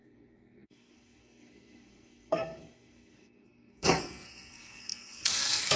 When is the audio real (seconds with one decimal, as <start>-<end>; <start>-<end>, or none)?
none